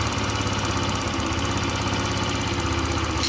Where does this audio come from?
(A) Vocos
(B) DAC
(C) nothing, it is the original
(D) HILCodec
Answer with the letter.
C